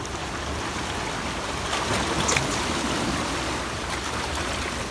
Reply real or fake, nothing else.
real